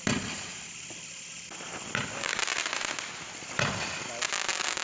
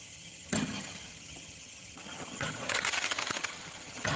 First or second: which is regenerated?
second